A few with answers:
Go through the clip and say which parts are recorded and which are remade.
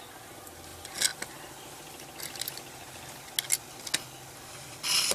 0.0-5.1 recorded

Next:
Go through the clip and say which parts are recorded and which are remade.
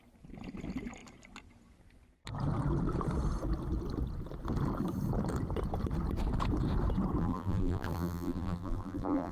0.0-7.2 recorded; 7.2-9.3 remade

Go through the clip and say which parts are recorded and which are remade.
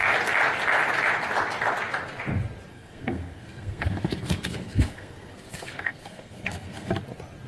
0.0-2.7 recorded; 2.7-6.9 remade; 6.9-7.5 recorded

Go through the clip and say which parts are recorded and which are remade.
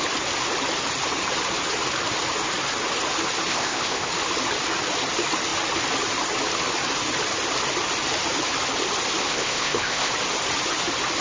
0.0-3.5 recorded; 3.5-4.1 remade; 4.1-9.3 recorded; 9.3-10.1 remade; 10.1-11.2 recorded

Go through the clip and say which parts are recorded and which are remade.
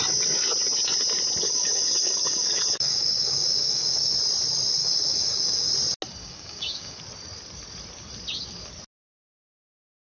0.0-1.4 recorded; 1.4-4.1 remade; 4.1-4.8 recorded; 4.8-5.7 remade; 5.7-6.2 recorded; 6.2-7.0 remade; 7.0-10.1 recorded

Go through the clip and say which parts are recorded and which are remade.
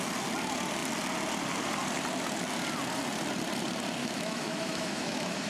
0.0-4.0 recorded; 4.0-5.5 remade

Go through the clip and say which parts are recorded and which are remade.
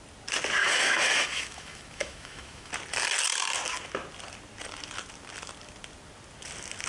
0.0-0.6 recorded; 0.6-2.7 remade; 2.7-6.9 recorded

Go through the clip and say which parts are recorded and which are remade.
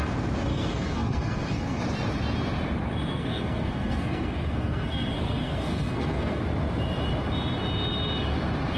0.0-0.5 recorded; 0.5-1.8 remade; 1.8-3.1 recorded; 3.1-6.4 remade; 6.4-8.8 recorded